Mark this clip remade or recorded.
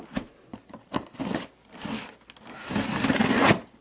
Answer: recorded